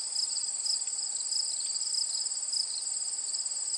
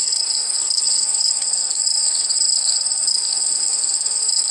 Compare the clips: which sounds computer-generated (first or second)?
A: second